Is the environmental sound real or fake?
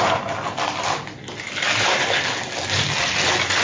real